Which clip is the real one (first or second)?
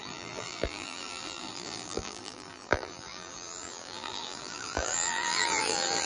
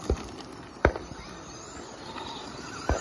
second